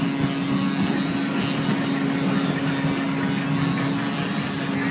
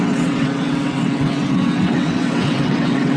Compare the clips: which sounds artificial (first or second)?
second